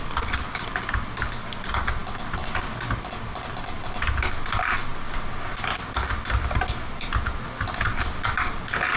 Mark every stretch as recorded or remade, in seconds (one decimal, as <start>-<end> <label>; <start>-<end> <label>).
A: 0.0-9.0 recorded